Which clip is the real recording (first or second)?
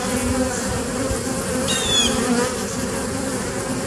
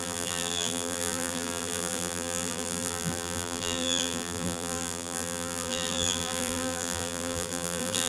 first